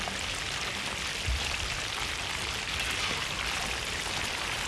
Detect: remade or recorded recorded